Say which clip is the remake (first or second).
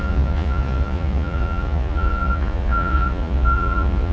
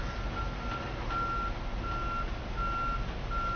first